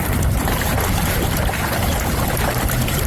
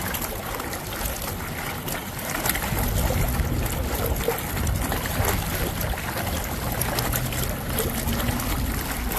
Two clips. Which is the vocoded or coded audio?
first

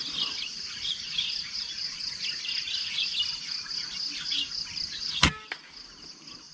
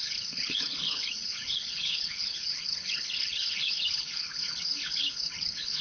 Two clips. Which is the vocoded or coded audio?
second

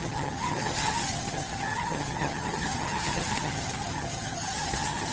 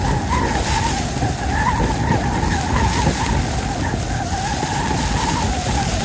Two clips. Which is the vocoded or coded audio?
first